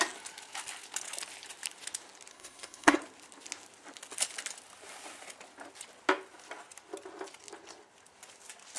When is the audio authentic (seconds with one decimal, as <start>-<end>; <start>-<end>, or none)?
0.0-2.3; 3.0-8.8